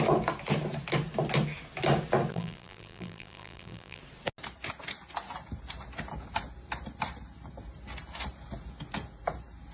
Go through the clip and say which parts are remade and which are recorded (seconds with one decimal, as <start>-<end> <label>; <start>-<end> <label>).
0.0-2.3 recorded; 2.3-4.0 remade; 4.0-9.7 recorded

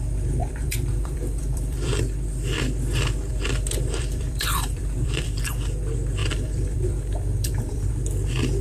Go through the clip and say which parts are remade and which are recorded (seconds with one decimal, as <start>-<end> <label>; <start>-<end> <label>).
0.0-0.4 recorded; 0.4-2.0 remade; 2.0-3.3 recorded; 3.3-5.5 remade; 5.5-6.2 recorded; 6.2-7.9 remade; 7.9-8.6 recorded